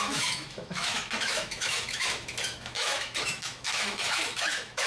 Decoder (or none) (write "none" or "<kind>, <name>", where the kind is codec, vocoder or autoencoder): autoencoder, DAC-VAE